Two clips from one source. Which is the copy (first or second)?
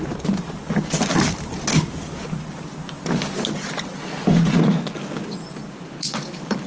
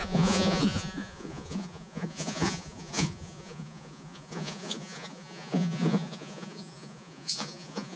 second